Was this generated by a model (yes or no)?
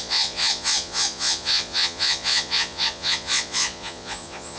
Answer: yes